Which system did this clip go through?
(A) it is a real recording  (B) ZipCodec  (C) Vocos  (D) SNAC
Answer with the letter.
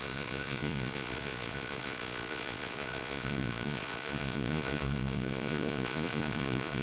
C